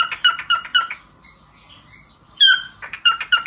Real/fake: real